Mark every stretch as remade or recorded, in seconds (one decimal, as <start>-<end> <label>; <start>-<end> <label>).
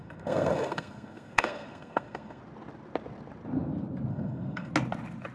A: 0.0-2.4 remade; 2.4-4.1 recorded; 4.1-4.7 remade; 4.7-5.3 recorded